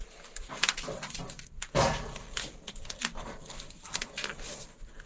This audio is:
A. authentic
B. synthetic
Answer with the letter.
A